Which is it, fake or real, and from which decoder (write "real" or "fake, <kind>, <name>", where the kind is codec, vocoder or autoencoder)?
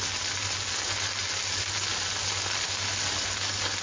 real